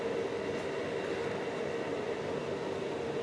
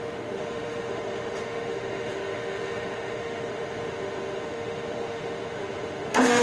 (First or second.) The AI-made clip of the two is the second